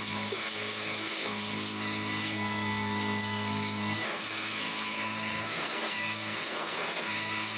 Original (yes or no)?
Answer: no